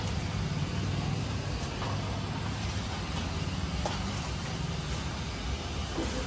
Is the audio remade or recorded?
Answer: recorded